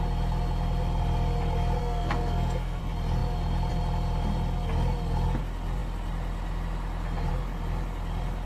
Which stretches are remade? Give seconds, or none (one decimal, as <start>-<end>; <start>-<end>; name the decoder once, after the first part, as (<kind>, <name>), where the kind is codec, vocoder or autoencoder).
1.8-2.8 (codec, SNAC)

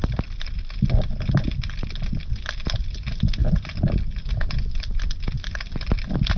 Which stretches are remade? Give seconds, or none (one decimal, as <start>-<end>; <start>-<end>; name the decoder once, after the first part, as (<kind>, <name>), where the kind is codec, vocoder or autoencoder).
none

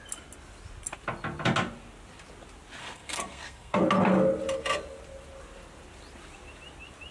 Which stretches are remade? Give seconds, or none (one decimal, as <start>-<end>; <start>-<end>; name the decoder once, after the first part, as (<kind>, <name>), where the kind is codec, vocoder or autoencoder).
2.8-3.8 (codec, SNAC)

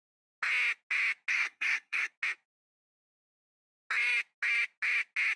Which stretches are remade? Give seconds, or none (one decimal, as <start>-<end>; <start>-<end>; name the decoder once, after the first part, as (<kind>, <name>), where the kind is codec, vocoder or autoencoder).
1.3-2.1 (codec, SNAC)